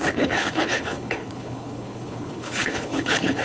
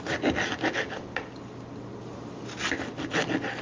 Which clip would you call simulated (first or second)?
first